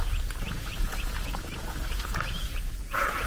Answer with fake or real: fake